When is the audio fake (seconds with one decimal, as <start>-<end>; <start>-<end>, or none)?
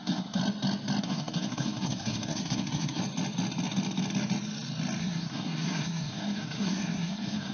0.0-0.4; 1.0-3.0; 5.0-7.5